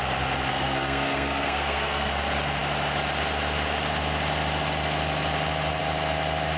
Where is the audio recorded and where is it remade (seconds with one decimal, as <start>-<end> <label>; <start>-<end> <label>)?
0.0-0.5 recorded; 0.5-2.1 remade; 2.1-6.6 recorded